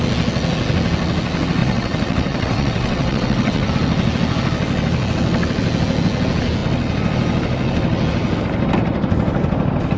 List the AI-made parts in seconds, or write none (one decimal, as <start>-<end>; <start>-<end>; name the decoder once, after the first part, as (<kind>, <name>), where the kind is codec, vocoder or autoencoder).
1.6-3.7 (vocoder, WaveNeXt)